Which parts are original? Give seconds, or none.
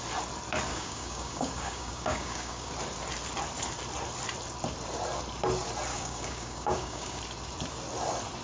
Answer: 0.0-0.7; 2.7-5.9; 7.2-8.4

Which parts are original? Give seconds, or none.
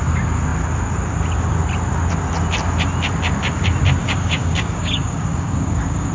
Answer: 0.0-4.0